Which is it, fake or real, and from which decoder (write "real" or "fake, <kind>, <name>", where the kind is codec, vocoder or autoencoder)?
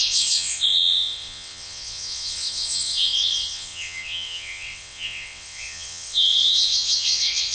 fake, vocoder, WaveNeXt